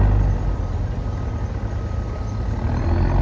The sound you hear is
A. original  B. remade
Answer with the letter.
A